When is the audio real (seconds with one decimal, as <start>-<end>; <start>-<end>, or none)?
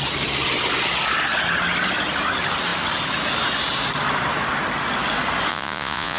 0.0-5.5